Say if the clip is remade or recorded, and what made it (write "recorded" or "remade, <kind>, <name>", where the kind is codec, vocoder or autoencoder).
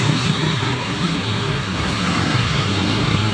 remade, codec, SNAC